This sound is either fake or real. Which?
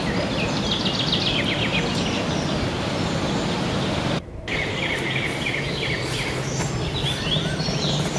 real